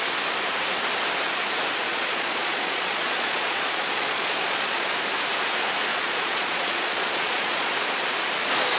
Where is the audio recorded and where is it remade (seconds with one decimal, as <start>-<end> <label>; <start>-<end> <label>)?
0.0-1.9 recorded; 1.9-4.9 remade; 4.9-5.9 recorded; 5.9-7.7 remade; 7.7-8.8 recorded